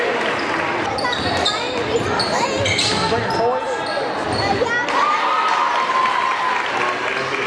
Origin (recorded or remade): recorded